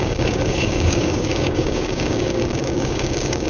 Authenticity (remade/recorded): remade